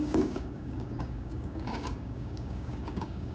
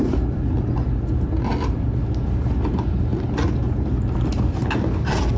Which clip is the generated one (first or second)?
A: first